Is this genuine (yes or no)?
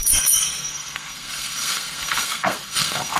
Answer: no